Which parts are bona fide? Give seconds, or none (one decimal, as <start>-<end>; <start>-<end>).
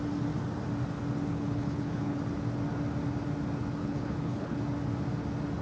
0.0-1.3; 2.2-3.8; 4.6-5.6